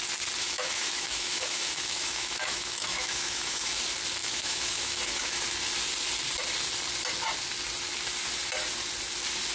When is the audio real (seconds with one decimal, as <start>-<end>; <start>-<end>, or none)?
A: 0.0-0.4; 3.8-4.2; 5.4-9.5